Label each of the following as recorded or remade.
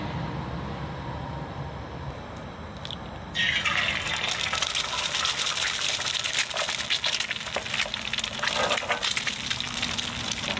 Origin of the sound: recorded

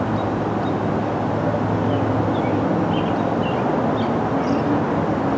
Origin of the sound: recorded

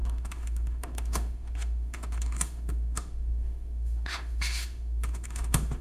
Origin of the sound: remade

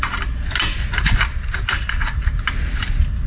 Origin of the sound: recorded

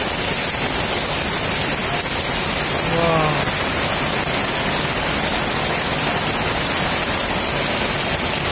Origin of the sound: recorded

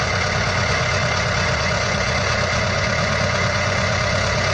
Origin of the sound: remade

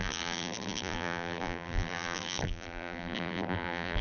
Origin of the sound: remade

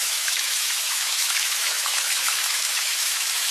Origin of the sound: remade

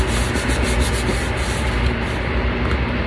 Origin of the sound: recorded